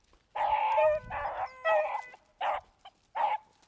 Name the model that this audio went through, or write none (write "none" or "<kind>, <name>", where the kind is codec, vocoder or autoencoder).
none